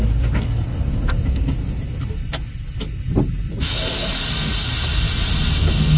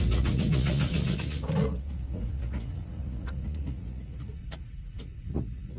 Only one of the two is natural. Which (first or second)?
first